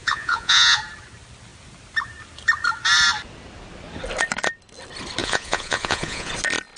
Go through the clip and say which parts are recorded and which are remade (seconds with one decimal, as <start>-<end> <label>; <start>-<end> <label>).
0.0-0.8 remade; 0.8-5.2 recorded; 5.2-6.3 remade; 6.3-6.8 recorded